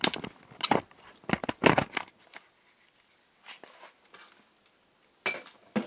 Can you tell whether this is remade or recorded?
recorded